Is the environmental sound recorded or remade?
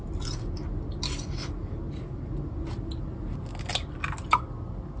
recorded